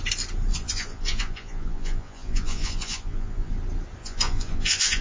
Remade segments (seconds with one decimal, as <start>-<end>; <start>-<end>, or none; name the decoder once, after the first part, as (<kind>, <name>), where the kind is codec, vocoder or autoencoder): 0.5-3.5 (vocoder, Vocos); 4.0-5.0